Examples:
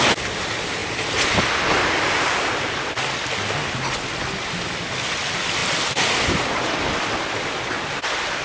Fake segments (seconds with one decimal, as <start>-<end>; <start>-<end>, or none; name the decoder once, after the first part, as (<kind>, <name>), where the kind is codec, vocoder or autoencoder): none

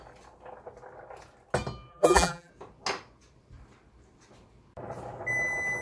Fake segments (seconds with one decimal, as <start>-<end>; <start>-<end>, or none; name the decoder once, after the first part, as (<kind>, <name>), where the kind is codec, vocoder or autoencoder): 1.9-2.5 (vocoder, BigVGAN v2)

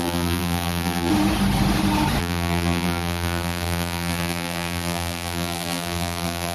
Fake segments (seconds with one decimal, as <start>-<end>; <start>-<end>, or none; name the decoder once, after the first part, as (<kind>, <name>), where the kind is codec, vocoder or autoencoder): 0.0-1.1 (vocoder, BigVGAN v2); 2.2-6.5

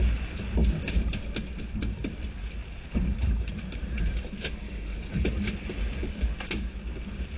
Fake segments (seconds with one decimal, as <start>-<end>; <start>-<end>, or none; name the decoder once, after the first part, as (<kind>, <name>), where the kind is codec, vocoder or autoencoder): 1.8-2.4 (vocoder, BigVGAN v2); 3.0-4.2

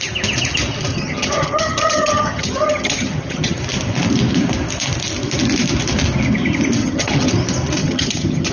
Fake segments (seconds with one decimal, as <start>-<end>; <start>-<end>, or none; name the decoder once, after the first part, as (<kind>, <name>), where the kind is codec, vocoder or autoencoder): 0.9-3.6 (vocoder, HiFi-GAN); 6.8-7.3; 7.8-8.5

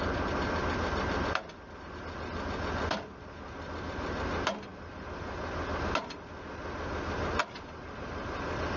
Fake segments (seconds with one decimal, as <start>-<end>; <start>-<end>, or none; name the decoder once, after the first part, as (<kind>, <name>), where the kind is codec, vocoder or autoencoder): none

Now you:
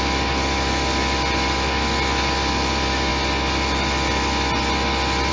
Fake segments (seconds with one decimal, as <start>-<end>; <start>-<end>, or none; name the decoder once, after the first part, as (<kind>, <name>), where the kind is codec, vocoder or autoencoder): none

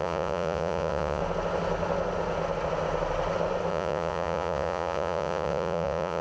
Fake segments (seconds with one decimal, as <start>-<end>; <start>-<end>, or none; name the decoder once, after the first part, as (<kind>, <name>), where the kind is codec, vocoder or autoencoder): 0.0-1.2 (vocoder, Vocos); 3.7-6.2